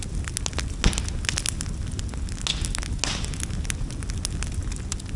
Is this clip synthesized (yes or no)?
no